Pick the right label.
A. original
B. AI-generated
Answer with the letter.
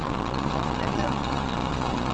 B